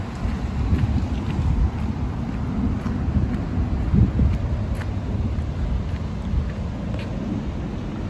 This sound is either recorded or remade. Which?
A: recorded